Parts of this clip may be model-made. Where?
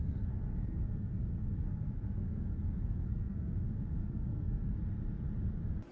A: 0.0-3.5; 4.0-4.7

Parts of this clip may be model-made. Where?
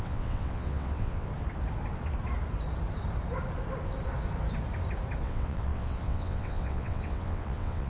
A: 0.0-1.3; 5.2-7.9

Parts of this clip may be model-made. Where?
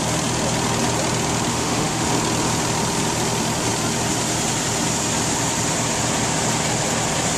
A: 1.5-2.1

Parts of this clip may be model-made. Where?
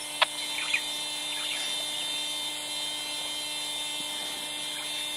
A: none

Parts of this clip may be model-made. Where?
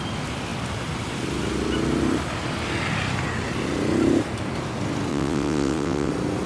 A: 5.1-6.1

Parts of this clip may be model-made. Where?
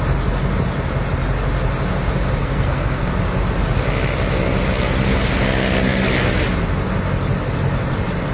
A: 2.4-3.1